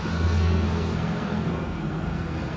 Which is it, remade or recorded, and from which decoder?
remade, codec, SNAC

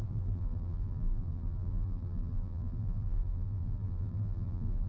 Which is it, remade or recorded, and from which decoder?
remade, vocoder, BigVGAN v2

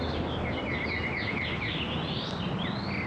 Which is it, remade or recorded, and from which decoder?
recorded